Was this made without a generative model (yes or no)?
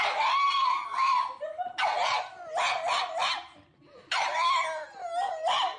yes